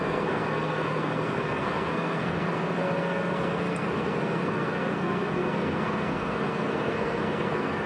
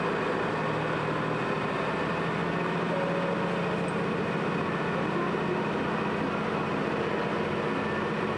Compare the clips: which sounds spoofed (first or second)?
first